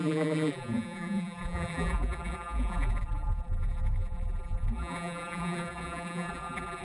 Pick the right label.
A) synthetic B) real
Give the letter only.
A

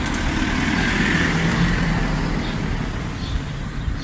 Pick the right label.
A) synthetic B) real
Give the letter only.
B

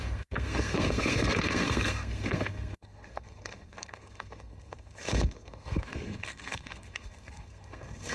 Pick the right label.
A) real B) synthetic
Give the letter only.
B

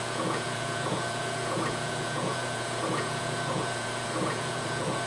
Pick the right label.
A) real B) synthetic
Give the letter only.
B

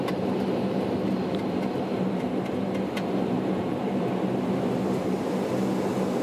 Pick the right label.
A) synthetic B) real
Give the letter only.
B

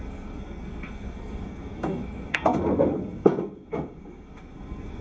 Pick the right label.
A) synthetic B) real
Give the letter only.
A